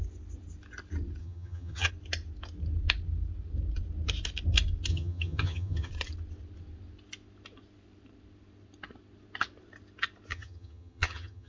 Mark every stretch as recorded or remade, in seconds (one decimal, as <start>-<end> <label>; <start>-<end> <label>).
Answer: 0.0-1.2 recorded; 1.2-1.9 remade; 1.9-4.9 recorded; 4.9-5.9 remade; 5.9-10.3 recorded; 10.3-11.5 remade